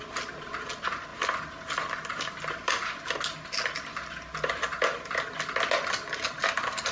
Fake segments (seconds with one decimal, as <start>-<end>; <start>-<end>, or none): none